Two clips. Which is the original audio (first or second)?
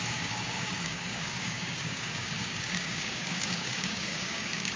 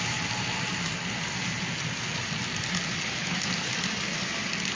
second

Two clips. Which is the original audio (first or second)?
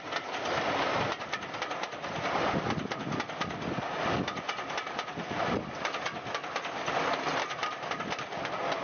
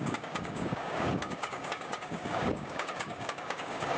first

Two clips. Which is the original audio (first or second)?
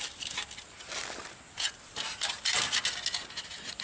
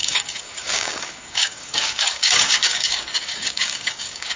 first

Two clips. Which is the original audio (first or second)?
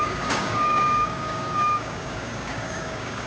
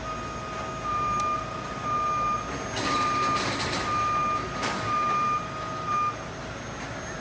second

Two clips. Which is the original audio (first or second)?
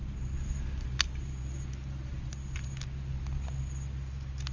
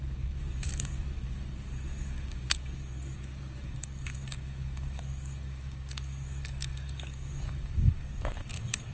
first